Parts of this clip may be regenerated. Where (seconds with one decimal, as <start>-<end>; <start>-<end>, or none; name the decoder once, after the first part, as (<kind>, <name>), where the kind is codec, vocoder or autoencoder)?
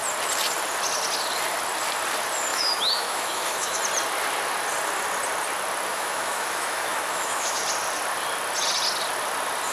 2.5-3.8 (autoencoder, DAC-VAE); 5.9-7.6